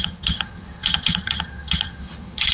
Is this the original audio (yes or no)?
no